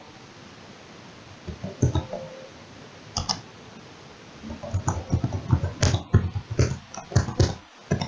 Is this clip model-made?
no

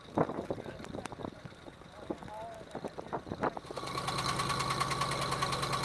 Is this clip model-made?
no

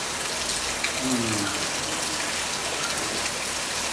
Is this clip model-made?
no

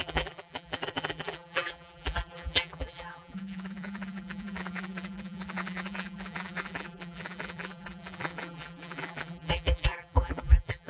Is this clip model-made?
yes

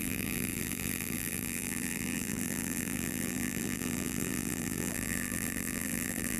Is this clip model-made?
yes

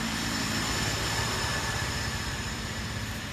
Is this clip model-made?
yes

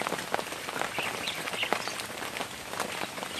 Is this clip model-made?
no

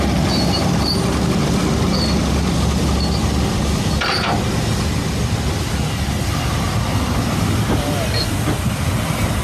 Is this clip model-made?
no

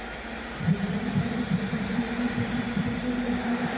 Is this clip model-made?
yes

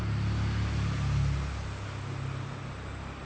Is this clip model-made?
no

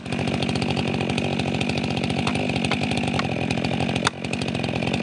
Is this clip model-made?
no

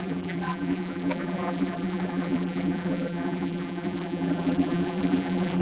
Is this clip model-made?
yes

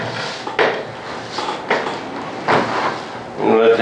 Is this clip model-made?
no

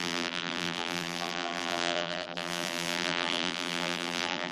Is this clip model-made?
yes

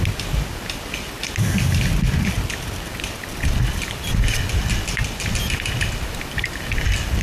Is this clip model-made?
no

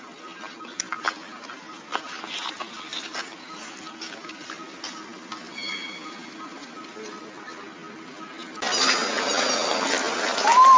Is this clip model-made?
no